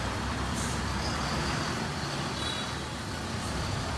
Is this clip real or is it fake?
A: real